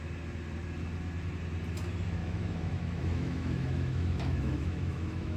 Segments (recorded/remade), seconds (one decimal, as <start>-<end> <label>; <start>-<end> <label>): 0.0-2.2 recorded; 2.2-5.4 remade